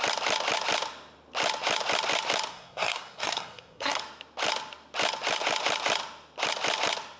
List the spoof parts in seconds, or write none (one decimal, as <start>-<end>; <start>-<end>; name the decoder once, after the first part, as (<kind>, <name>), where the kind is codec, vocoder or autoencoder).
2.5-4.0 (codec, SNAC)